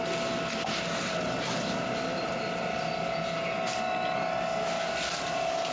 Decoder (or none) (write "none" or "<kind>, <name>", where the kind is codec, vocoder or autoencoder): none